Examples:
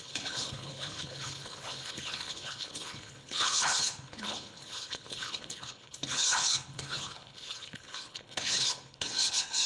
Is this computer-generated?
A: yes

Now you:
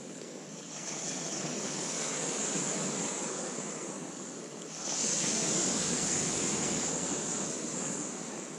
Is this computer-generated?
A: yes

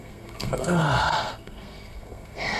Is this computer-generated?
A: yes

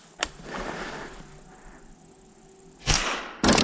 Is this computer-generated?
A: no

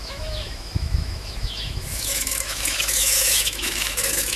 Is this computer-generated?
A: yes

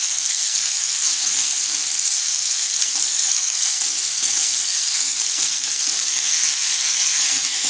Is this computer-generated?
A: yes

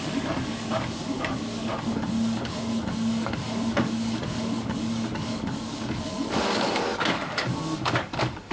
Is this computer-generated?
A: yes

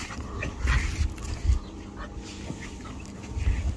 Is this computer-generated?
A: no